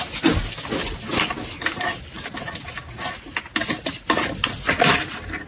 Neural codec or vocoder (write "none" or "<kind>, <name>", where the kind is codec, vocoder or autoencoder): none